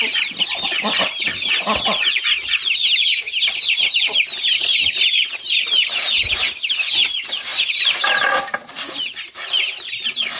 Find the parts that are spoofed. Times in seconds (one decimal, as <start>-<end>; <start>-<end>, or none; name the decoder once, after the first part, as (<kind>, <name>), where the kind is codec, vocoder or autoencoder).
7.5-9.0 (vocoder, BigVGAN v2)